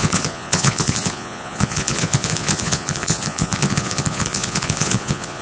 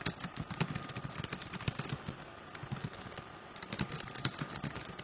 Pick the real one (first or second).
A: second